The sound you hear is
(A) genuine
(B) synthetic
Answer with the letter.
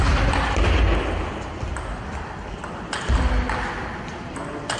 A